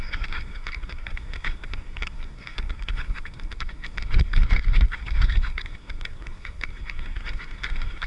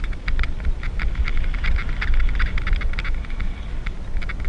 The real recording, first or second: second